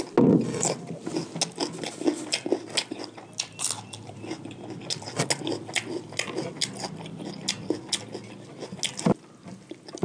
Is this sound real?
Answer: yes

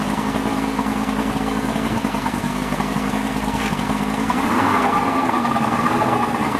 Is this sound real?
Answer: no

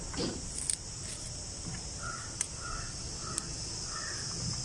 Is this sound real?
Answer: yes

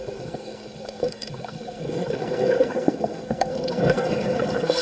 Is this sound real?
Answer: no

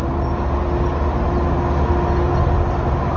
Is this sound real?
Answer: yes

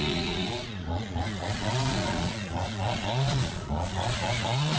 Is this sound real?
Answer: no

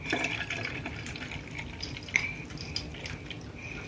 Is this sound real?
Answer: yes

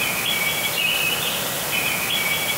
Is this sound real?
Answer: yes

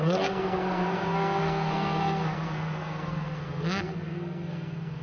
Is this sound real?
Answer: no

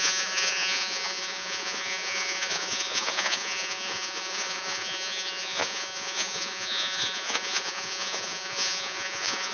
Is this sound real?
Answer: no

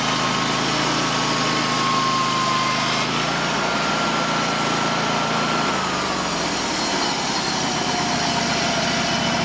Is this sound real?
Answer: yes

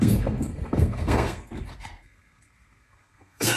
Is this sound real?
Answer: no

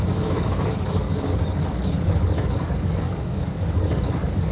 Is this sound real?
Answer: no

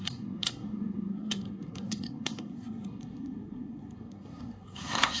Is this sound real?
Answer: no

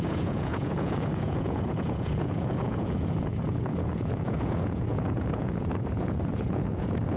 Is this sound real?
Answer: no